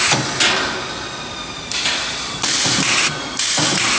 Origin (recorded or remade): remade